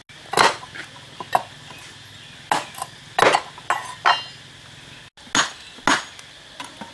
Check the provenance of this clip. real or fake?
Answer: real